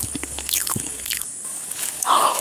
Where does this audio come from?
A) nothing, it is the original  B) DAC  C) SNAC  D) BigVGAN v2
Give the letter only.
B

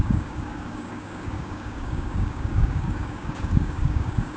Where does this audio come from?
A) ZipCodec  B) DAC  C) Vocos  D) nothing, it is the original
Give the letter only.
B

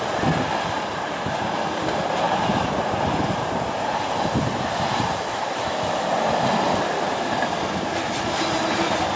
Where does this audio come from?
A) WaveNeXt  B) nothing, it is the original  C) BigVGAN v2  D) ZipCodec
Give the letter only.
C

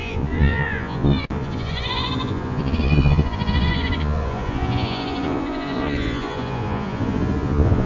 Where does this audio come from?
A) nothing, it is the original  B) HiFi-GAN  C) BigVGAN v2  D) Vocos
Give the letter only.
D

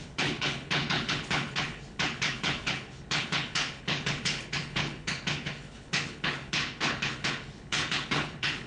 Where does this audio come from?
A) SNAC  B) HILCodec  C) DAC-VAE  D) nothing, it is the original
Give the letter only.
B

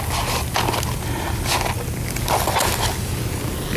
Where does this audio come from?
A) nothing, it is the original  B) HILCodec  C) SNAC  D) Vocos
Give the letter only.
A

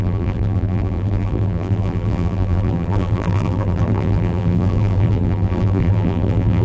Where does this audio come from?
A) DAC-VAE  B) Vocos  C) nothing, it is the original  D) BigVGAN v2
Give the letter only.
D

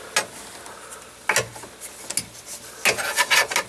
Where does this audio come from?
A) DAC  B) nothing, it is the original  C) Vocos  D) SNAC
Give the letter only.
B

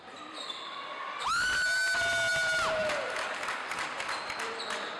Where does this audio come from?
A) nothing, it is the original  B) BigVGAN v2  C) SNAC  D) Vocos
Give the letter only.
A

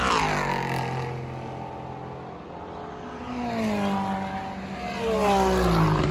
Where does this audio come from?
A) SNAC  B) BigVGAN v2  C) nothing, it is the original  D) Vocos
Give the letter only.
C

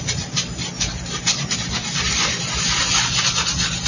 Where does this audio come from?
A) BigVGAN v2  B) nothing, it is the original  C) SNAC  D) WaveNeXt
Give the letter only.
B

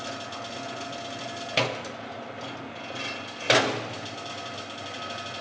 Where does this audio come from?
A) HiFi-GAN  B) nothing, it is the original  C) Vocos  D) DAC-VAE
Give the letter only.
B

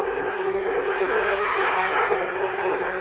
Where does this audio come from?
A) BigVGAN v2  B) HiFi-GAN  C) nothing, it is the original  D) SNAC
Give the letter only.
D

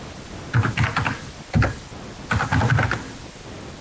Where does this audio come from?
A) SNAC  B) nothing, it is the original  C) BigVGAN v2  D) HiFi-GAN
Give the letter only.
B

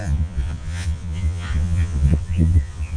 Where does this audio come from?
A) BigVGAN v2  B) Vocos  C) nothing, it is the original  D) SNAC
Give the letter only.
B